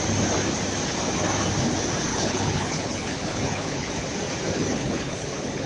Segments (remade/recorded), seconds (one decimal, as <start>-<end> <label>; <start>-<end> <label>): 0.0-2.1 recorded; 2.1-3.9 remade; 3.9-4.7 recorded; 4.7-5.7 remade